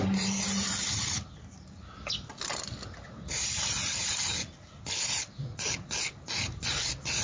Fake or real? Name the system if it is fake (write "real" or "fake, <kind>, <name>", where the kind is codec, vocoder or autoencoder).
real